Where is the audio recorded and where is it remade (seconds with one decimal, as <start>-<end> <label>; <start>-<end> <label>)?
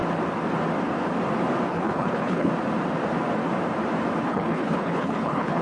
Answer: 0.0-1.7 recorded; 1.7-2.5 remade; 2.5-4.2 recorded; 4.2-5.6 remade